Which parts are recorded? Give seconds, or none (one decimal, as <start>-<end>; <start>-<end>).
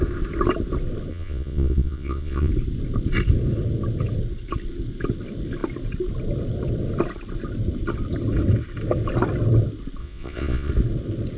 0.0-1.1; 2.5-10.0; 10.7-11.4